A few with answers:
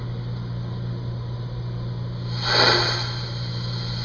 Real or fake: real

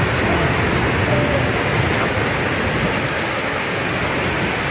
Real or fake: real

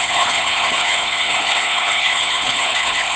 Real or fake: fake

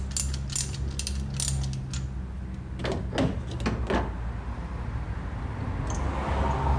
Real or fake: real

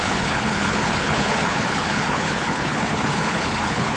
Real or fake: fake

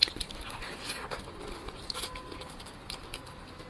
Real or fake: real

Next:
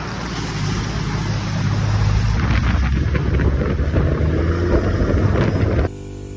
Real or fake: real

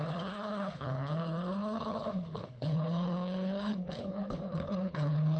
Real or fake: fake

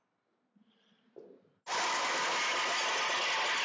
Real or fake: real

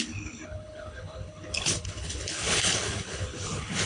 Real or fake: fake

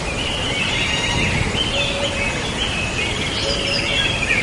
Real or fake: real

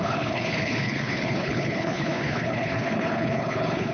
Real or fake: fake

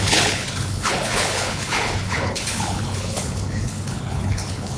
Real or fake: fake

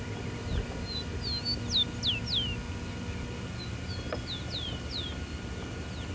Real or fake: real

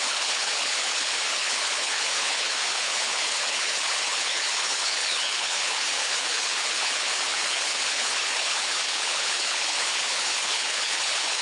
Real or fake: fake